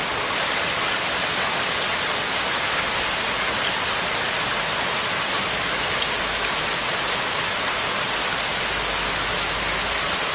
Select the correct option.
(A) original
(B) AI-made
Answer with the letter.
A